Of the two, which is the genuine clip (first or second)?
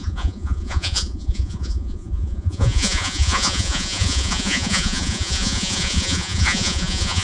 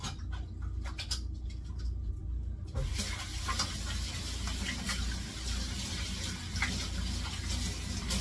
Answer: second